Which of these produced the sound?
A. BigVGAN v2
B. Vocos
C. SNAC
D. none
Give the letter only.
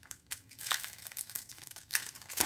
C